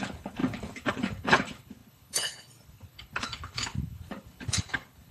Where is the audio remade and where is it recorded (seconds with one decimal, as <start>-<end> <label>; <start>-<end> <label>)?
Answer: 0.0-5.1 remade